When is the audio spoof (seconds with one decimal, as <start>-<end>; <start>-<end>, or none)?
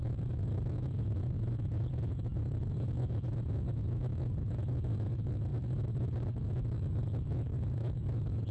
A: 0.0-8.5